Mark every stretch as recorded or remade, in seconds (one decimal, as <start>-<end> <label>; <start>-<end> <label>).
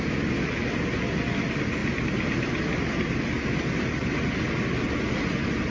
0.0-5.7 recorded